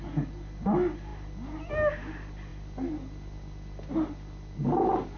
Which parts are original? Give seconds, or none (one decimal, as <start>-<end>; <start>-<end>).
0.0-5.2